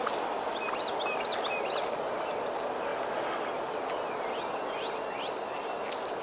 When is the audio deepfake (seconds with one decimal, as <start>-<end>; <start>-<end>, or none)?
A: none